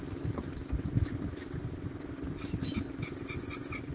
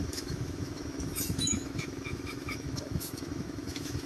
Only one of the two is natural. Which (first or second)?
first